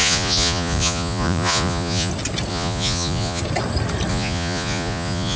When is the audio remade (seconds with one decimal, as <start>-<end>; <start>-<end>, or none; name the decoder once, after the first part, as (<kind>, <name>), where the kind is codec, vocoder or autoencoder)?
0.0-2.1 (vocoder, Vocos); 2.5-3.4; 4.1-5.4